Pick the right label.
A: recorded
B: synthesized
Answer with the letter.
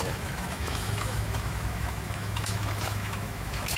B